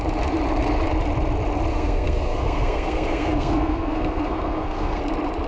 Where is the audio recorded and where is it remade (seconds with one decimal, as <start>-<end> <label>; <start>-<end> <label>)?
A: 0.0-1.7 recorded; 1.7-5.0 remade; 5.0-5.5 recorded